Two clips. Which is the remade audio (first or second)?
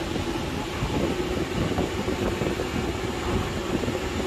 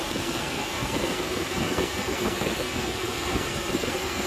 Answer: second